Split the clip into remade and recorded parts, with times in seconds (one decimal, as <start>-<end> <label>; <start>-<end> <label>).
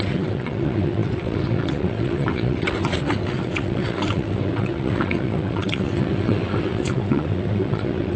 0.0-8.2 remade